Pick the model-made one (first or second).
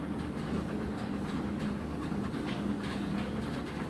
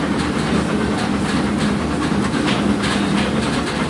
first